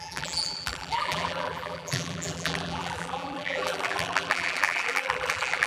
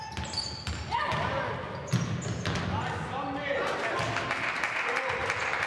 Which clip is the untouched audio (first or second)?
second